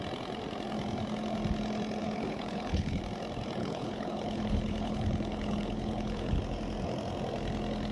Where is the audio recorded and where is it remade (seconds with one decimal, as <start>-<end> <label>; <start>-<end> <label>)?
0.0-2.0 recorded; 2.0-3.0 remade; 3.0-3.6 recorded; 3.6-6.4 remade; 6.4-7.9 recorded

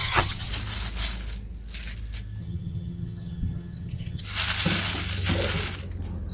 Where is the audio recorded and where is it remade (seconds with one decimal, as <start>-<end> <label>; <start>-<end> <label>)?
0.0-0.5 remade; 0.5-2.4 recorded; 2.4-4.2 remade; 4.2-6.3 recorded